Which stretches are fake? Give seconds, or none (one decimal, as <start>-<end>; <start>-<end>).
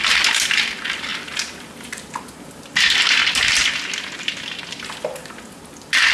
none